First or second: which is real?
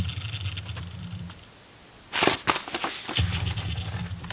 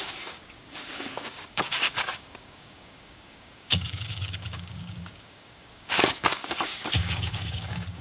first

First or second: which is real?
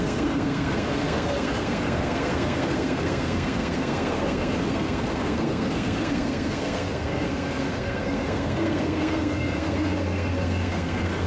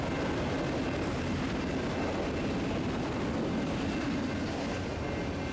second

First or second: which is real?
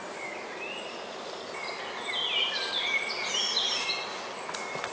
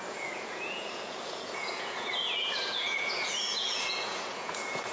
first